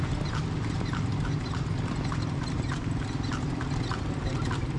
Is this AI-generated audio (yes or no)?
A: no